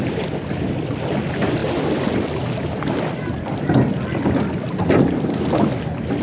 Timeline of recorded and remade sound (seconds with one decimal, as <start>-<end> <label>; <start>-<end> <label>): 0.0-6.2 recorded

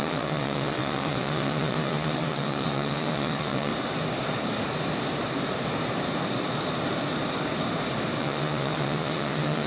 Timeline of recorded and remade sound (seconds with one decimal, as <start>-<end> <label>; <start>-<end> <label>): 0.0-3.7 remade; 3.7-8.2 recorded; 8.2-9.7 remade

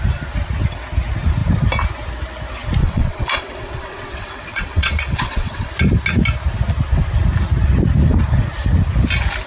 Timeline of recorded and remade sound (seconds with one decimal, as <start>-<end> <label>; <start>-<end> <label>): 0.0-2.8 recorded; 2.8-5.7 remade; 5.7-9.5 recorded

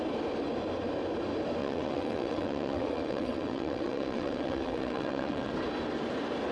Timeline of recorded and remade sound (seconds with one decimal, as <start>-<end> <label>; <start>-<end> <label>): 0.0-1.6 recorded; 1.6-5.5 remade; 5.5-6.5 recorded

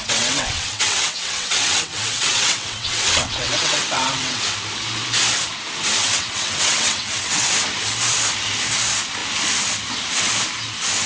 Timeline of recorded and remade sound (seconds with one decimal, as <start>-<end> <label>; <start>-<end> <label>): 0.0-4.4 remade; 4.4-6.0 recorded; 6.0-7.5 remade; 7.5-11.1 recorded

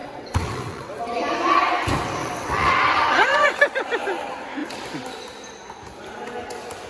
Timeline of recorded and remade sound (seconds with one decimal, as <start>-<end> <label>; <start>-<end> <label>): 0.0-1.0 remade; 1.0-2.2 recorded; 2.2-3.6 remade; 3.6-6.9 recorded

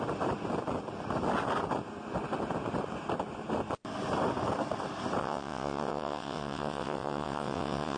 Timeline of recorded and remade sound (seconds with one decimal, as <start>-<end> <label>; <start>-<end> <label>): 0.0-5.2 recorded; 5.2-8.0 remade

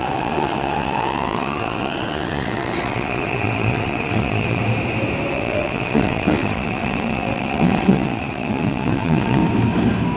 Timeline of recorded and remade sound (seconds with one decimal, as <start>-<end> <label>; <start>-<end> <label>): 0.0-4.6 remade; 4.6-5.3 recorded; 5.3-9.4 remade; 9.4-10.2 recorded